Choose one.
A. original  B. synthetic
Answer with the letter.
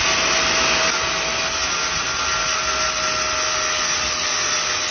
A